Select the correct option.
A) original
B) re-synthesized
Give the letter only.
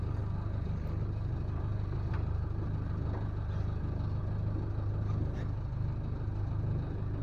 A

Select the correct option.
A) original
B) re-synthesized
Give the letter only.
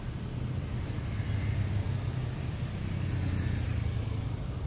A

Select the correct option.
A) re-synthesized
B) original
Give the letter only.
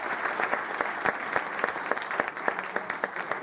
B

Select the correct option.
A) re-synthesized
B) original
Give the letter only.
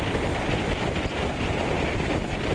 B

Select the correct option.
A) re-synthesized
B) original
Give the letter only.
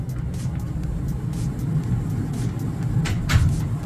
B